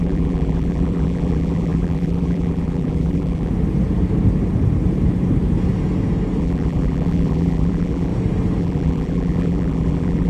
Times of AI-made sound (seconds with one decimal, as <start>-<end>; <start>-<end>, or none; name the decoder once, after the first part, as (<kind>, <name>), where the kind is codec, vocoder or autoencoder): 0.0-3.5 (vocoder, BigVGAN v2); 6.4-8.1; 8.6-10.3